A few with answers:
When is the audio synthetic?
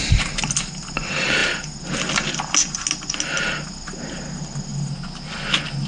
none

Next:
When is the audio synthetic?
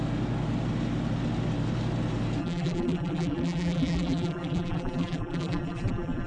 2.4-6.3 (vocoder, BigVGAN v2)